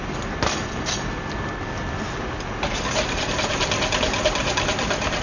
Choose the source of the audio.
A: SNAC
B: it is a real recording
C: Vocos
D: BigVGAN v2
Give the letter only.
B